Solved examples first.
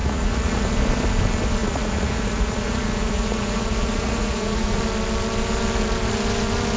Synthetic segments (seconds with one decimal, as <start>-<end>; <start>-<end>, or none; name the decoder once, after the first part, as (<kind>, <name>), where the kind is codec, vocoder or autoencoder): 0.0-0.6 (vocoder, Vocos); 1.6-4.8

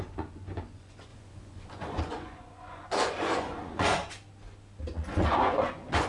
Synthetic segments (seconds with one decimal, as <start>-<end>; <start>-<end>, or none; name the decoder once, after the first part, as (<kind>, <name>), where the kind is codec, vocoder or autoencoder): 0.0-4.0 (vocoder, Vocos); 4.9-6.1

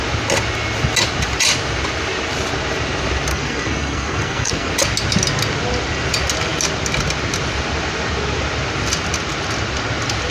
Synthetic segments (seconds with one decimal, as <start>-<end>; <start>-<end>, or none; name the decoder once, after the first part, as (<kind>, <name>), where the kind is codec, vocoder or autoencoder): 3.3-4.7 (codec, SNAC)

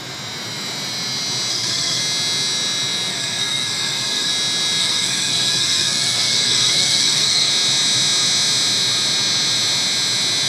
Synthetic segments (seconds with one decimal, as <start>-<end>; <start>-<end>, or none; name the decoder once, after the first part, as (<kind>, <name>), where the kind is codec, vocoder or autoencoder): 1.5-2.0 (codec, SNAC); 3.1-4.3; 4.8-7.5